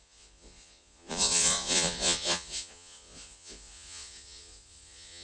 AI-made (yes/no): yes